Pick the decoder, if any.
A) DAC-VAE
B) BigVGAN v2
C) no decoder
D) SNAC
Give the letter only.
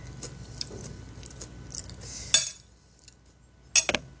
C